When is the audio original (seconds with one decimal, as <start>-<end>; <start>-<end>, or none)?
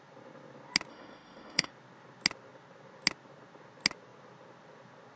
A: 0.0-0.9; 1.7-5.2